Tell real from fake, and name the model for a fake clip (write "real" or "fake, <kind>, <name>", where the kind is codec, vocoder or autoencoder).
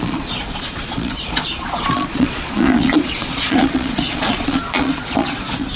fake, vocoder, Vocos